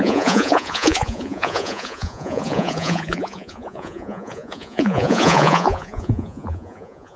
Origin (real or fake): fake